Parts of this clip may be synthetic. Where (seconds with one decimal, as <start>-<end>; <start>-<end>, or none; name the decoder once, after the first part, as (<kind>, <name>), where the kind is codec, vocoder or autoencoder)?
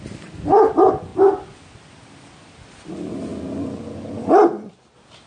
none